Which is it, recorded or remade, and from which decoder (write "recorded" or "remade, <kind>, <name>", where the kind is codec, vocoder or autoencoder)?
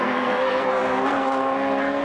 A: remade, codec, SNAC